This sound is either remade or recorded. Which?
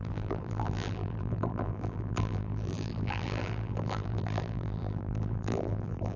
remade